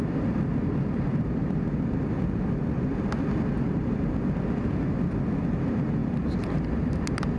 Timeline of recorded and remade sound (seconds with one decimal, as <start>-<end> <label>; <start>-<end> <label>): 0.0-7.4 recorded